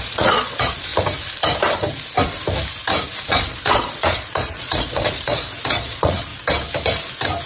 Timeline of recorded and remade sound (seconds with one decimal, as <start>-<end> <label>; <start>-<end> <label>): 0.0-0.9 remade; 0.9-3.3 recorded; 3.3-6.3 remade; 6.3-7.5 recorded